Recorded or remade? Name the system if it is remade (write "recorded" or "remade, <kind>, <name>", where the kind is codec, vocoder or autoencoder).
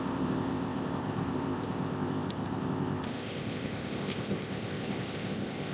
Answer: remade, codec, ZipCodec